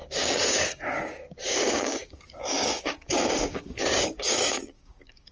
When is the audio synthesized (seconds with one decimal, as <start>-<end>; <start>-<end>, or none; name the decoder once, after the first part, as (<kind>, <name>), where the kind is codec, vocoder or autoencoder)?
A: 0.0-5.3 (codec, DAC)